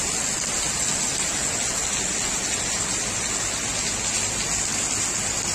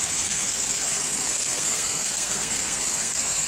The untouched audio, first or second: first